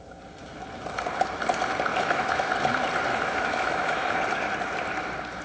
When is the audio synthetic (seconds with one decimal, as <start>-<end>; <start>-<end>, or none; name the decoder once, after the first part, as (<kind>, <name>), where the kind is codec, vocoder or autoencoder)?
1.9-2.5 (autoencoder, DAC-VAE); 3.1-4.2